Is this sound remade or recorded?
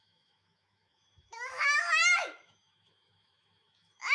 remade